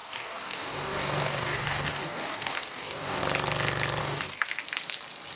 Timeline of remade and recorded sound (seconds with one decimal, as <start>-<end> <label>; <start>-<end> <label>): 0.0-3.2 remade; 3.2-4.0 recorded; 4.0-4.5 remade; 4.5-5.4 recorded